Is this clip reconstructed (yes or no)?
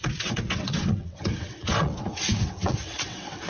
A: yes